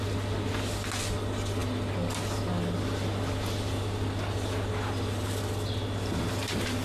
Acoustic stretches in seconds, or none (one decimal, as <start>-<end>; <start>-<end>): 0.0-6.8